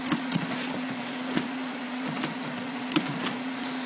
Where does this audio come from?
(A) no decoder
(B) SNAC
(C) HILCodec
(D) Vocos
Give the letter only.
D